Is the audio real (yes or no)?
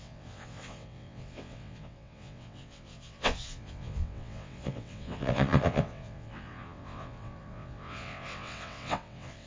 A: no